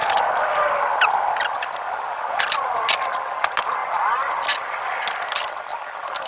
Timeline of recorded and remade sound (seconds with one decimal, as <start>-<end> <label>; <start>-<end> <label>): 0.0-6.3 recorded